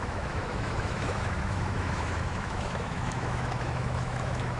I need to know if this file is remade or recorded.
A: remade